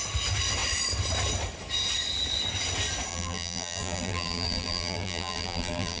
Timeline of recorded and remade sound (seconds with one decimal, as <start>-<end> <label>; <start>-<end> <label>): 0.0-3.1 recorded; 3.1-6.0 remade